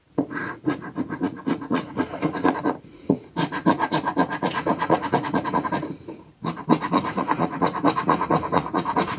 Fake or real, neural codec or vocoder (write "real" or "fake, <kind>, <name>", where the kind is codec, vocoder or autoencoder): fake, vocoder, Vocos